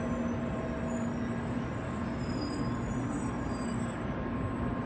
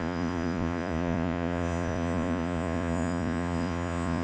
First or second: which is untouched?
first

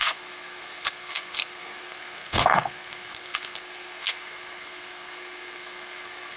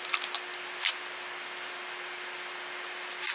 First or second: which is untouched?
second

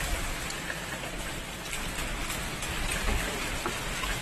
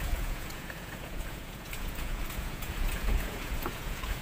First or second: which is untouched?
first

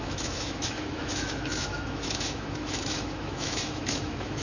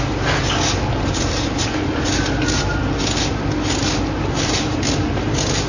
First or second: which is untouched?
second